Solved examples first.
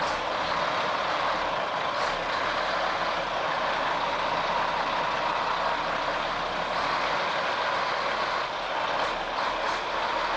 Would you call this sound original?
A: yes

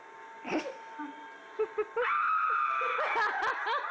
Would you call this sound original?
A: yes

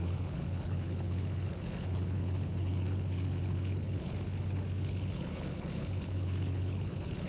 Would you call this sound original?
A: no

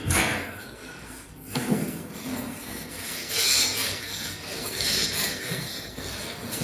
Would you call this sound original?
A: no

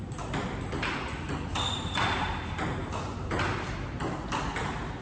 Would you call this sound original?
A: yes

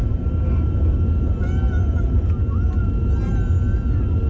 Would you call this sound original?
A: yes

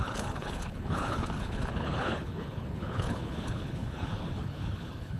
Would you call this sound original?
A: no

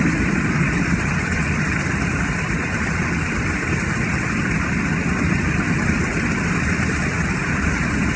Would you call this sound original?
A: yes